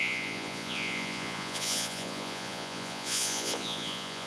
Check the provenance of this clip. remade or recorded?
remade